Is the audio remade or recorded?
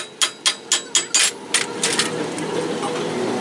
recorded